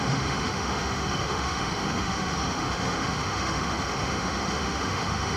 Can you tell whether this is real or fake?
fake